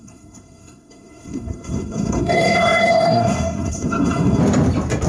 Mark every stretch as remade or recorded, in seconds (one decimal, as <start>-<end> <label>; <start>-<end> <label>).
0.0-4.4 remade; 4.4-5.1 recorded